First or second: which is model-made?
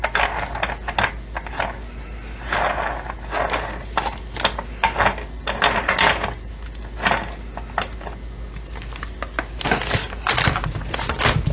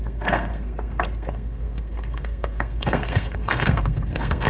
second